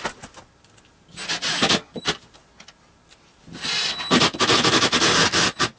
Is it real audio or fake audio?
real